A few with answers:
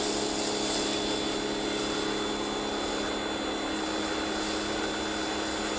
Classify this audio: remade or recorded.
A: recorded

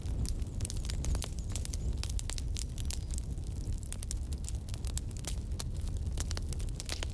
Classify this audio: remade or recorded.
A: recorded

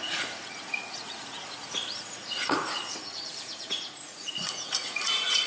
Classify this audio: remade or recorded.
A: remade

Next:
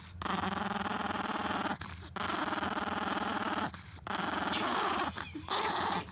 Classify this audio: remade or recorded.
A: recorded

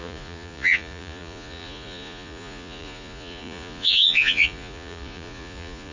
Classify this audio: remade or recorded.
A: remade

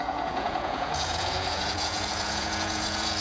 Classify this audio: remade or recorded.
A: remade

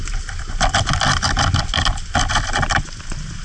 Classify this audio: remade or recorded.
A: recorded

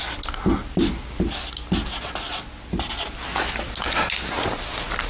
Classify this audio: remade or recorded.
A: recorded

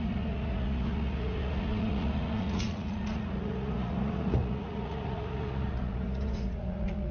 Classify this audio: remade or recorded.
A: remade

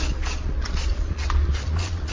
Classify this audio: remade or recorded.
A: remade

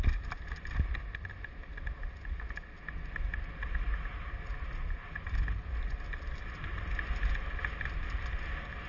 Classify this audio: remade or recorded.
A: recorded